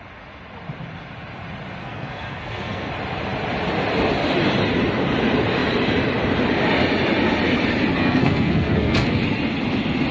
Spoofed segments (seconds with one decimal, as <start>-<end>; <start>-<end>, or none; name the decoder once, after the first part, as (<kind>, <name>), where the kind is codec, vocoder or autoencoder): 1.8-2.9 (codec, SNAC); 8.0-9.2